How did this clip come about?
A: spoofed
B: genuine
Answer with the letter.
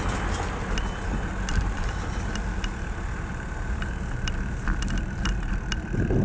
B